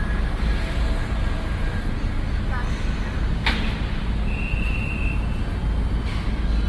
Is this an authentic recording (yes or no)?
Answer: yes